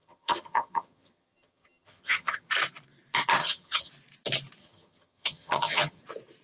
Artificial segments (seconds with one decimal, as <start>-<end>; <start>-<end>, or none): 0.0-2.5; 3.4-3.9; 4.6-6.0

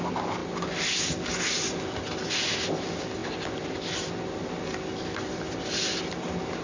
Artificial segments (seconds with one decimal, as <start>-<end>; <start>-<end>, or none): none